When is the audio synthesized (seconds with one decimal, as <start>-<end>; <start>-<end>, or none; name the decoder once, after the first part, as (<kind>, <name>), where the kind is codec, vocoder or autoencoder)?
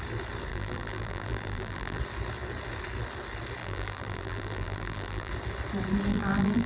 0.5-2.0 (vocoder, BigVGAN v2); 3.6-5.3; 6.1-6.7